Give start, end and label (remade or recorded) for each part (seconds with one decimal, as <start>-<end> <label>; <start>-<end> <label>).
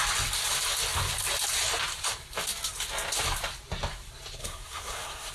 0.0-4.4 recorded; 4.4-5.3 remade